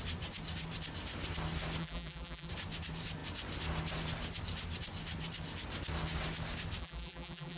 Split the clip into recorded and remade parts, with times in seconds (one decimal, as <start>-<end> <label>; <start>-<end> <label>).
0.0-1.8 recorded; 1.8-2.5 remade; 2.5-6.8 recorded; 6.8-7.6 remade